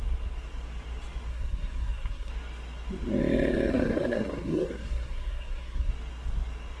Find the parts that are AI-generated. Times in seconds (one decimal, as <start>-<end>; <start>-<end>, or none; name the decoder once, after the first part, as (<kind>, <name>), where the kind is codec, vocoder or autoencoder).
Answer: 1.3-2.3 (codec, SNAC); 3.7-5.9